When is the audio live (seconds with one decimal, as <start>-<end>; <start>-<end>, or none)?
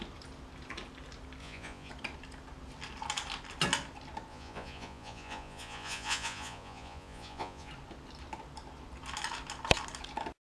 0.0-1.4; 1.9-4.3; 7.7-10.6